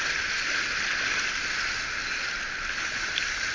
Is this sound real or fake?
real